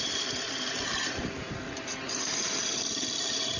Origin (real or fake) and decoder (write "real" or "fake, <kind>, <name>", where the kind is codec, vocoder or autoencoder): real